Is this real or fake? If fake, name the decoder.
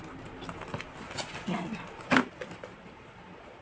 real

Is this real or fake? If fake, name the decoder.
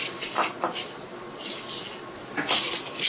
real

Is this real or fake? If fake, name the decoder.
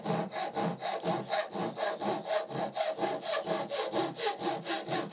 real